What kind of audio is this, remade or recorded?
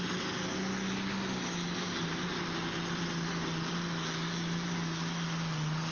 recorded